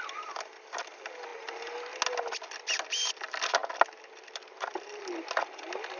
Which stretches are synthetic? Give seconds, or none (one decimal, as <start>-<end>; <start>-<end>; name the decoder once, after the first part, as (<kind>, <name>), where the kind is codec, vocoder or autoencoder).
none